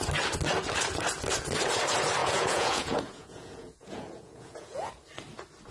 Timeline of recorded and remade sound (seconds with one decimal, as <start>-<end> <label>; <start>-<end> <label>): 0.0-2.2 recorded; 2.2-4.9 remade; 4.9-5.7 recorded